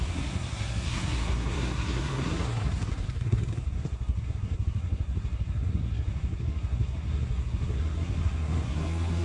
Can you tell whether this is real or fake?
fake